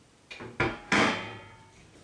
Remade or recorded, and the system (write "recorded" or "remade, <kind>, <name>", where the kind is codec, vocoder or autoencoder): recorded